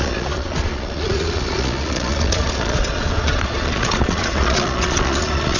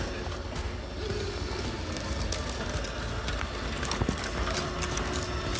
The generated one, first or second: first